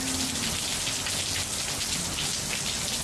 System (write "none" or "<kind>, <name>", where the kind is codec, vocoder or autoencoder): none